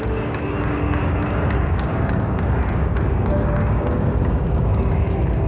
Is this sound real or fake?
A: fake